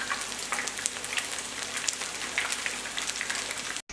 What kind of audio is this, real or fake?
real